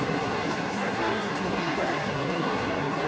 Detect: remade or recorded remade